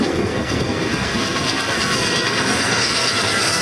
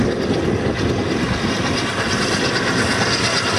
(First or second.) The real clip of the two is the second